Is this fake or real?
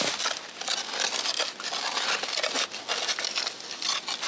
real